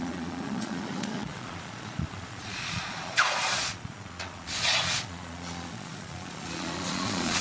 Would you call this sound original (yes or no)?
no